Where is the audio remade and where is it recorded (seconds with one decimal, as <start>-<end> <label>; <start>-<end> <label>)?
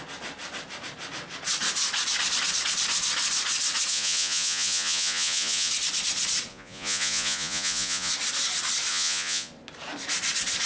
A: 0.0-3.9 recorded; 3.9-5.7 remade; 5.7-6.5 recorded; 6.5-8.1 remade; 8.1-8.9 recorded; 8.9-9.5 remade; 9.5-10.7 recorded